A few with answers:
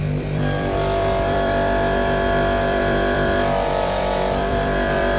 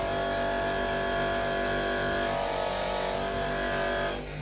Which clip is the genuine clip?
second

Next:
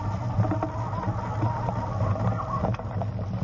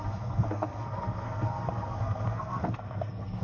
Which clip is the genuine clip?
first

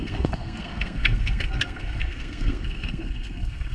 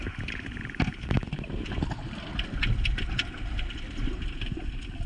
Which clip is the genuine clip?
second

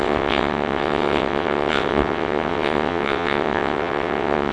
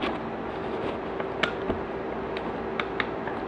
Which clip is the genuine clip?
second